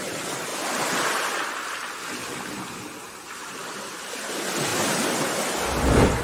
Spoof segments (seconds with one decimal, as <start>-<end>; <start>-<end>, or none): none